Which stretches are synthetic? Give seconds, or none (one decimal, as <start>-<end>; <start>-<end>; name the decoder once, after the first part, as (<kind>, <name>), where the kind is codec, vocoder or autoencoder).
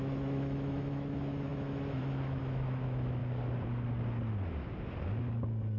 0.0-3.2 (autoencoder, DAC-VAE)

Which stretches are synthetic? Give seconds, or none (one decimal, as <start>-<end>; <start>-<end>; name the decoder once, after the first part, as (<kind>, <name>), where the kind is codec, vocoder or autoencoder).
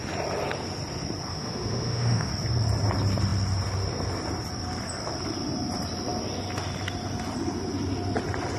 1.3-2.3 (autoencoder, DAC-VAE)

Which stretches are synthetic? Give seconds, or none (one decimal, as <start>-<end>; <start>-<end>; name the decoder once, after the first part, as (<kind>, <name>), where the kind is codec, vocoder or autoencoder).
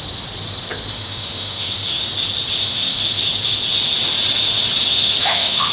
0.9-2.1 (autoencoder, DAC-VAE); 2.6-3.2; 4.9-5.7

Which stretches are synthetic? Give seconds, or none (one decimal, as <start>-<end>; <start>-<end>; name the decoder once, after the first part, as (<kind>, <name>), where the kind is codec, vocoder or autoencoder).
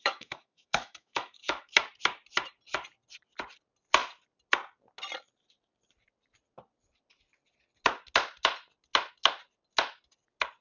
0.0-1.7 (autoencoder, DAC-VAE)